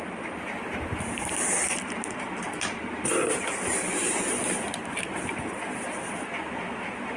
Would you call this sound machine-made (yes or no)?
no